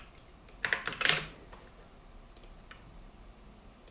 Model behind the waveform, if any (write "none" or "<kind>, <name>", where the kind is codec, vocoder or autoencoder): none